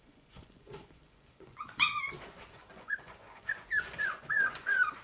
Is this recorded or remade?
remade